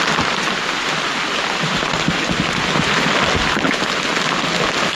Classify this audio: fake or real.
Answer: real